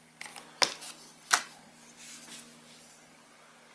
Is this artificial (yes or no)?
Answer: no